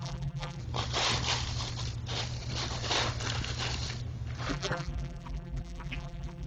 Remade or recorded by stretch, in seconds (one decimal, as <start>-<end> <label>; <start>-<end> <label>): 0.0-0.6 remade; 0.6-4.5 recorded; 4.5-6.5 remade